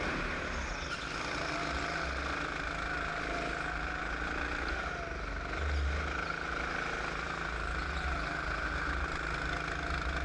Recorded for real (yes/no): yes